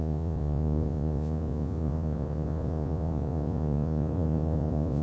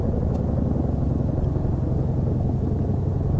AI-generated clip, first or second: first